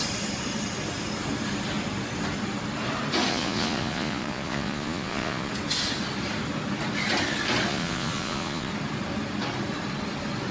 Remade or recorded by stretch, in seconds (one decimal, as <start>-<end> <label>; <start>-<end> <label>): 0.0-3.3 recorded; 3.3-5.5 remade; 5.5-7.7 recorded; 7.7-8.7 remade; 8.7-10.5 recorded